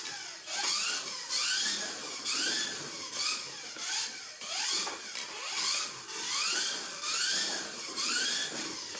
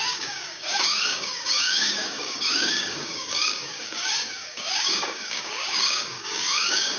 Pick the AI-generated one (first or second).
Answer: second